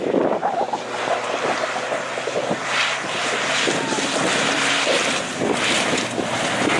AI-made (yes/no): no